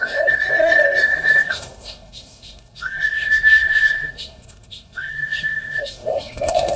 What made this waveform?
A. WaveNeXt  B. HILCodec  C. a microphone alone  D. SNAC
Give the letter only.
D